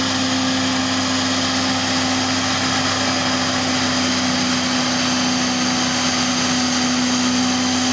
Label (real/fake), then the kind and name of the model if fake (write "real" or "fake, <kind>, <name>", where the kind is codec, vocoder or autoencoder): real